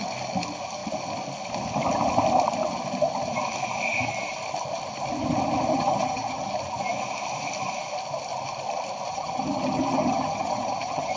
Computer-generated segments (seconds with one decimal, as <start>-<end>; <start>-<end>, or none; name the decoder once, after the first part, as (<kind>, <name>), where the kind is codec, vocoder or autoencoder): 5.7-6.5 (vocoder, HiFi-GAN); 9.1-11.2